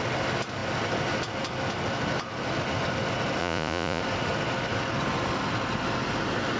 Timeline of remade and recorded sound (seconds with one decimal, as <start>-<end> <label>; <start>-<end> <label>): 0.0-3.4 recorded; 3.4-4.0 remade; 4.0-6.6 recorded